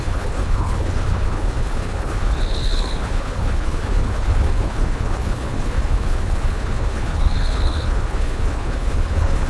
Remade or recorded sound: remade